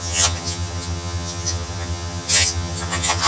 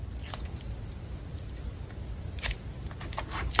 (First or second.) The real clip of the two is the second